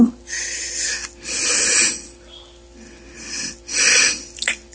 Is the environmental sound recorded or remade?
recorded